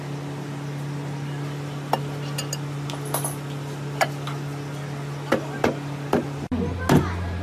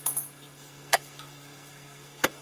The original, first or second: first